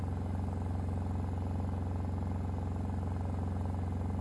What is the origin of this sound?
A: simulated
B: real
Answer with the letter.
B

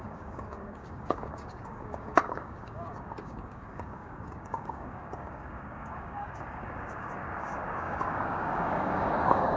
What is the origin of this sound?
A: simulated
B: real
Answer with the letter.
A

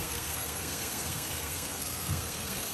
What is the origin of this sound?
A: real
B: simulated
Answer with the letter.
B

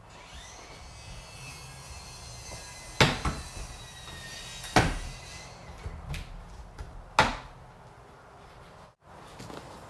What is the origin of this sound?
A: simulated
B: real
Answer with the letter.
B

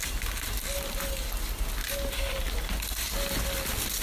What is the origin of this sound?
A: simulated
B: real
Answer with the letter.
B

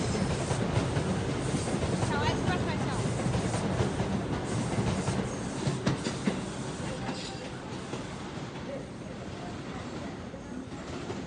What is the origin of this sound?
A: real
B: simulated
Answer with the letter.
A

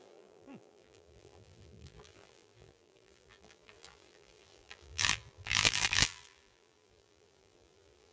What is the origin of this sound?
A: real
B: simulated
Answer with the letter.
B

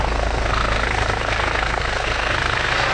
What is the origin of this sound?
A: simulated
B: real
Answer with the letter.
A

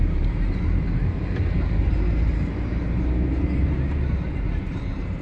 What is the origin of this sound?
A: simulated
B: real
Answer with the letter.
A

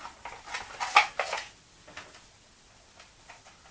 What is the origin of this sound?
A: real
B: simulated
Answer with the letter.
A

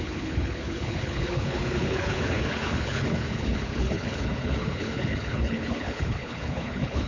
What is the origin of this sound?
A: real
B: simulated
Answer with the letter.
B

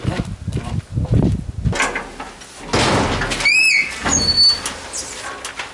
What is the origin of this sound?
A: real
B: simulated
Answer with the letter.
A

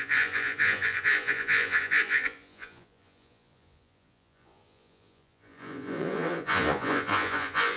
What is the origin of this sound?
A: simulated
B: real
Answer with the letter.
A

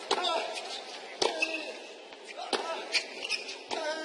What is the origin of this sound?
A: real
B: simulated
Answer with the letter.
A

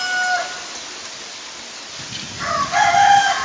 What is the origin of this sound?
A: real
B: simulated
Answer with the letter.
A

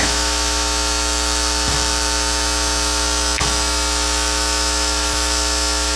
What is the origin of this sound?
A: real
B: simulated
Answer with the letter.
B